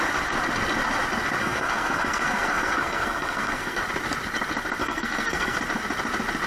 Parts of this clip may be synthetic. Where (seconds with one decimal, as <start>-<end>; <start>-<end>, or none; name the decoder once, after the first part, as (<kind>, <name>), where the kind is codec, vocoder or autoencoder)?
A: 1.4-3.8 (codec, SNAC); 4.8-5.6